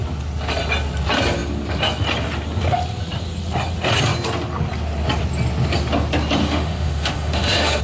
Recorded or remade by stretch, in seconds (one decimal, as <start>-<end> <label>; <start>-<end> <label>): 0.0-6.4 recorded; 6.4-7.8 remade